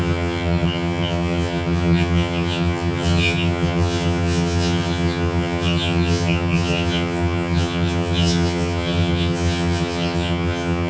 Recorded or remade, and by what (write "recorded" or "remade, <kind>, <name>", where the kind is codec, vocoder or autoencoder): remade, vocoder, HiFi-GAN